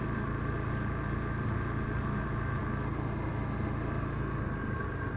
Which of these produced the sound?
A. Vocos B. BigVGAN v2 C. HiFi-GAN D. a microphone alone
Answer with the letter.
D